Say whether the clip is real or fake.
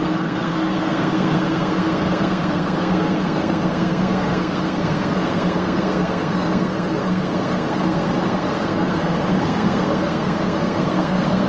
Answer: fake